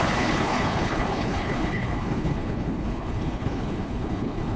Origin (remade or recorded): remade